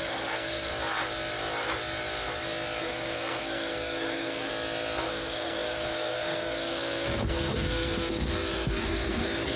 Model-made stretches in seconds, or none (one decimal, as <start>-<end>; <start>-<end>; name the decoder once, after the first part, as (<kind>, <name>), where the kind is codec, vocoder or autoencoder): 0.0-0.7 (codec, SNAC); 2.8-4.5; 5.1-9.6